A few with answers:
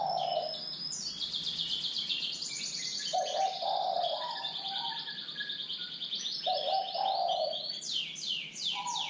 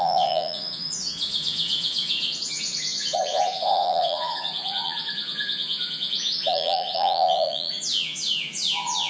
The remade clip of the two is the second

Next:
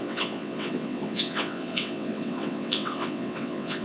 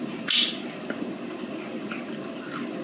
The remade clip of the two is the first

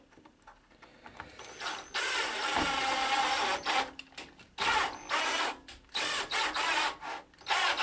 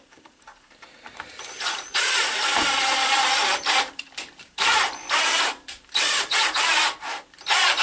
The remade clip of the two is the second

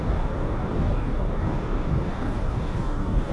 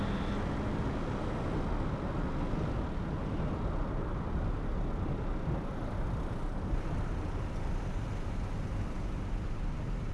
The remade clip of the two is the first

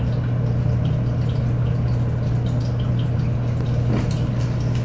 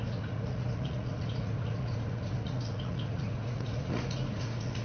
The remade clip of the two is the second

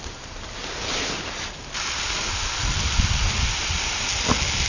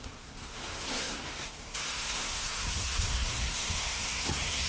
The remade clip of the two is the second